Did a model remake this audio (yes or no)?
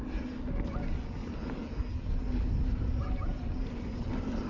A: no